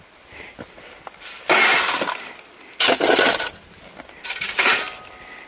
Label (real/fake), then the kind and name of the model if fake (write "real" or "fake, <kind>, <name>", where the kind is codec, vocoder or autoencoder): real